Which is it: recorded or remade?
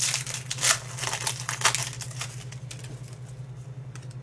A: recorded